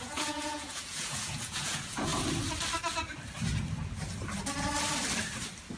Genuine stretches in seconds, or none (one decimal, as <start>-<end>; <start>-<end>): 2.1-5.8